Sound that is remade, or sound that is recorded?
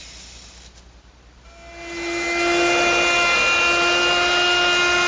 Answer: recorded